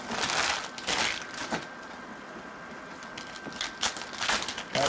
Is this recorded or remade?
recorded